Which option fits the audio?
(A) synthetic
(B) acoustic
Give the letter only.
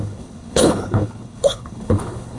A